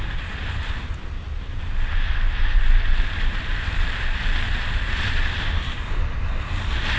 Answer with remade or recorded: recorded